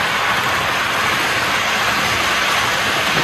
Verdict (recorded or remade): recorded